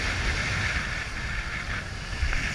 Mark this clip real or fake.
real